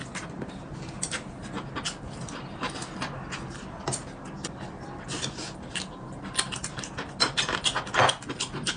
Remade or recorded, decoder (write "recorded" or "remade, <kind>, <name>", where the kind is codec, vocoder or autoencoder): recorded